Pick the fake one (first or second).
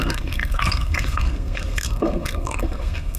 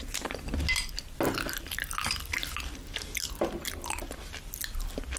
first